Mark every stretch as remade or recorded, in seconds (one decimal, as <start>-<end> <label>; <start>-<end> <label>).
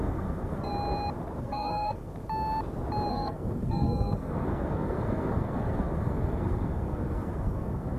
0.0-0.7 remade; 0.7-1.4 recorded; 1.4-2.1 remade; 2.1-3.1 recorded; 3.1-8.0 remade